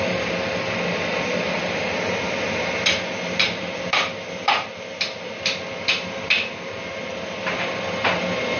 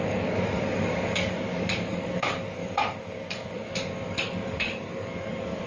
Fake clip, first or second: second